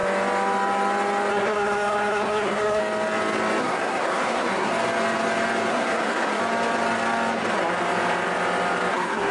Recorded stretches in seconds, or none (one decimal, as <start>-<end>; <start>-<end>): 0.0-1.3; 2.8-3.6; 4.7-5.7; 6.4-8.9